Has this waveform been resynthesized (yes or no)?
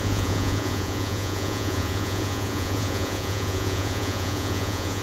yes